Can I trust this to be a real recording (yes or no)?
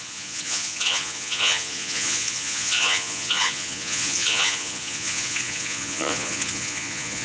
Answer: no